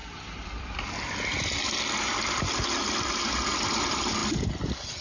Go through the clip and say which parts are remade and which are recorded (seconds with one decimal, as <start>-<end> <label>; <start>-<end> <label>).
0.0-5.0 recorded